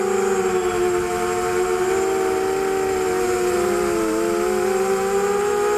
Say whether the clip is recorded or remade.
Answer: recorded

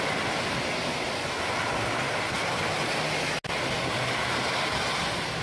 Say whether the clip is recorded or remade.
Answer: recorded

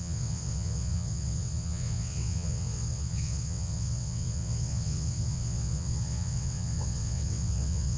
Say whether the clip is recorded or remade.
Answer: remade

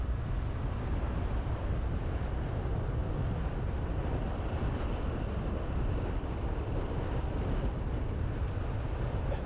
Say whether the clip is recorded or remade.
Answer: remade